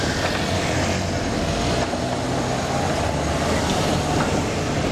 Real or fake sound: real